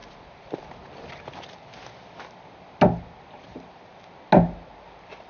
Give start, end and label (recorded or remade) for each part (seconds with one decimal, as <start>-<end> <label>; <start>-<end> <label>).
0.0-5.3 recorded